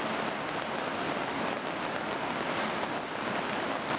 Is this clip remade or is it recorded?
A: recorded